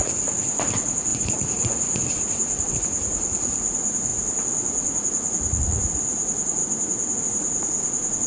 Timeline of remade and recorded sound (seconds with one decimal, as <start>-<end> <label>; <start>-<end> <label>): 0.0-6.6 remade; 6.6-7.2 recorded; 7.2-8.3 remade